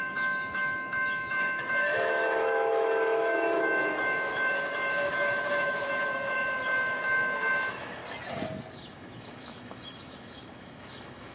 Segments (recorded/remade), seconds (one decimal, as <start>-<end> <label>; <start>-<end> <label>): 0.0-8.0 remade; 8.0-8.7 recorded; 8.7-11.3 remade